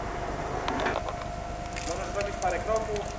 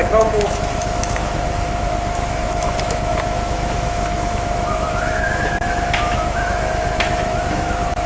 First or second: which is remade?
second